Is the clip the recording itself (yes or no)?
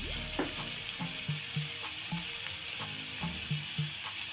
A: yes